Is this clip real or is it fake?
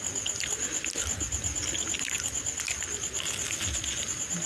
real